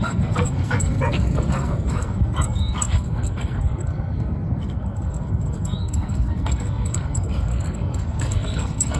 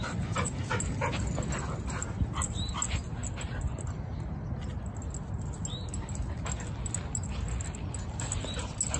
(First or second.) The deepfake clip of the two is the first